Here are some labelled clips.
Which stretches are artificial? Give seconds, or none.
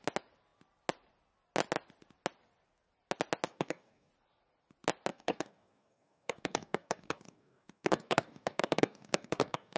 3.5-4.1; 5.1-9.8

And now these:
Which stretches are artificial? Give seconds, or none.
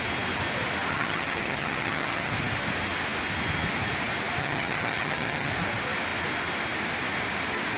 0.9-2.3; 4.4-5.5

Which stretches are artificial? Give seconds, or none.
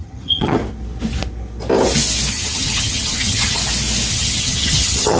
0.0-0.6; 2.3-3.6; 4.1-5.2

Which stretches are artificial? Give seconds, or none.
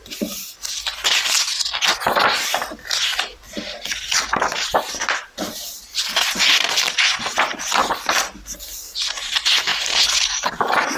none